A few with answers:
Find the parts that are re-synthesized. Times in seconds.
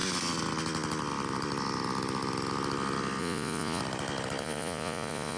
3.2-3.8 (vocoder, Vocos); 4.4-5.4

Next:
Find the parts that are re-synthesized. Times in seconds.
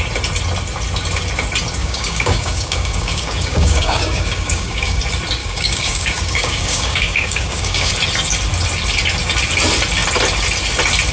1.8-5.0 (codec, DAC); 5.4-7.9